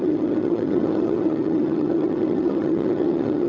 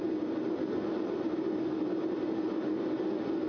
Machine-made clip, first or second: first